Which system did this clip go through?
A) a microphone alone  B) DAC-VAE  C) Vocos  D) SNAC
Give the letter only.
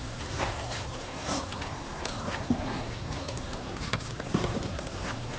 D